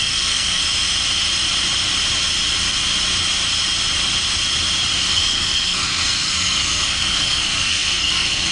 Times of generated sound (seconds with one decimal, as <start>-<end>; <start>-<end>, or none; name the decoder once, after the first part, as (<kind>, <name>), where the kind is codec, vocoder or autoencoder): 0.0-0.6 (codec, SNAC); 5.1-8.5